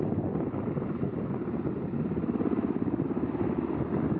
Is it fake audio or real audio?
real